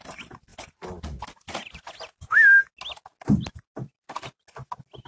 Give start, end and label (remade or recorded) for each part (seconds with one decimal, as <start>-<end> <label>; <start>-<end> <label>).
0.0-5.1 recorded